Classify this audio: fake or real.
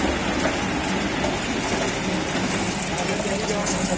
real